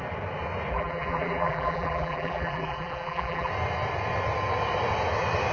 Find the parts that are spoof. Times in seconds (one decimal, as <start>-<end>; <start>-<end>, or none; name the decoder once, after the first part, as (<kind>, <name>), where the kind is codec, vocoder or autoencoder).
0.7-3.5 (vocoder, BigVGAN v2)